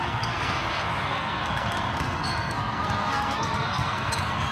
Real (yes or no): no